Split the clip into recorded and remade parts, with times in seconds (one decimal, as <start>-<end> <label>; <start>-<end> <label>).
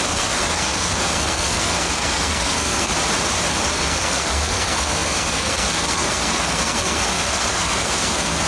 0.0-2.9 remade; 2.9-3.5 recorded; 3.5-8.5 remade